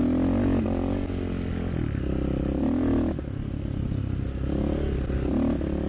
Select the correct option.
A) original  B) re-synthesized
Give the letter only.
A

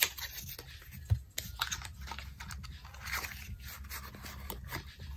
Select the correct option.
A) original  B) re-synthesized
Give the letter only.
A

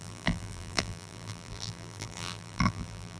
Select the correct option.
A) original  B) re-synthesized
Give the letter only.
B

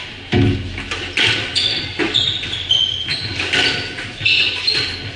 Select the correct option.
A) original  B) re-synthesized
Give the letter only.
A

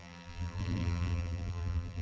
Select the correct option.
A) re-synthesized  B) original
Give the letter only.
A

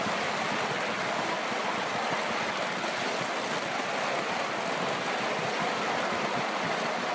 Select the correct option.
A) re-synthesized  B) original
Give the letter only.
B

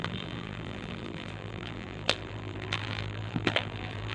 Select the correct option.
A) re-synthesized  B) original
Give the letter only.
A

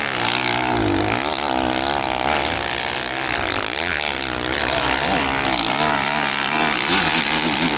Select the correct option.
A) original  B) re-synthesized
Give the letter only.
A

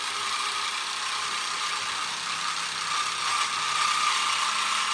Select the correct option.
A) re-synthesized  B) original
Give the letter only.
B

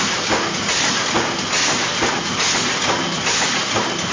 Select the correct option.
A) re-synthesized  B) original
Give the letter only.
B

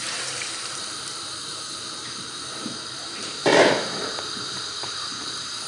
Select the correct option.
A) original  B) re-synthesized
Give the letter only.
B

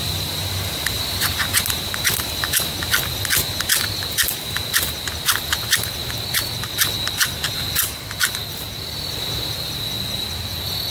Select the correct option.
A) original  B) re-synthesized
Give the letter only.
A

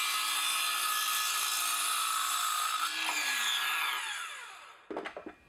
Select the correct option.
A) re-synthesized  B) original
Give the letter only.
B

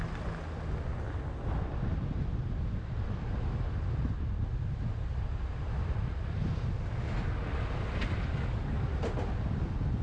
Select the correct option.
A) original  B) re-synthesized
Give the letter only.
A